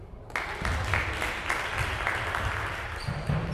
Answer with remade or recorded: recorded